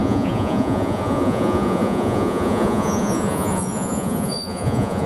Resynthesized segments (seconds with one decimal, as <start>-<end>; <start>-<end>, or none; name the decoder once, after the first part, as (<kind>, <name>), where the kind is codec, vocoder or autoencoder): 0.0-5.1 (vocoder, Vocos)